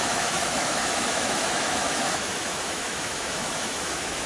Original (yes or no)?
no